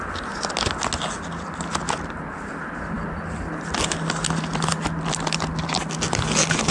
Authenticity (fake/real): real